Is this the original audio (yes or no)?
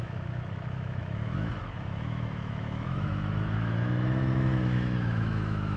no